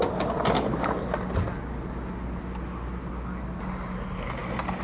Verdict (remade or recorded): recorded